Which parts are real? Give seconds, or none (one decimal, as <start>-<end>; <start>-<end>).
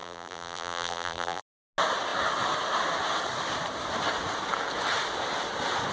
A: 1.4-5.9